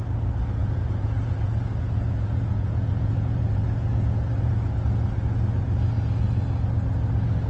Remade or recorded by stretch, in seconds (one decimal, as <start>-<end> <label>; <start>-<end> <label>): 0.0-0.6 recorded; 0.6-4.7 remade; 4.7-7.5 recorded